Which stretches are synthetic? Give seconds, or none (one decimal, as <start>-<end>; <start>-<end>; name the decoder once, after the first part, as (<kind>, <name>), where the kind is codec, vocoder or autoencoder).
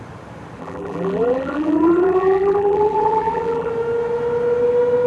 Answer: 0.6-3.7 (vocoder, BigVGAN v2)